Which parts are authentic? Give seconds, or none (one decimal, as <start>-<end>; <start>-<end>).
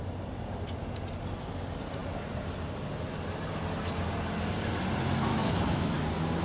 0.0-5.3; 6.0-6.4